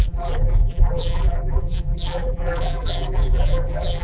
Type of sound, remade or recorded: remade